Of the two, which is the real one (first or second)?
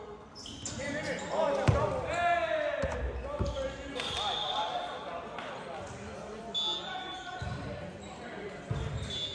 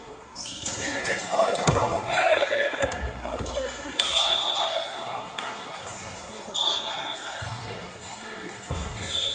first